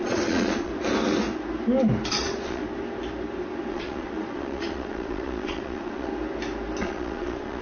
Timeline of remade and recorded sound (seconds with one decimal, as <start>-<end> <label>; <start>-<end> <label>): 0.0-0.7 remade; 0.7-2.1 recorded; 2.1-2.6 remade; 2.6-3.7 recorded; 3.7-6.1 remade; 6.1-6.8 recorded; 6.8-7.6 remade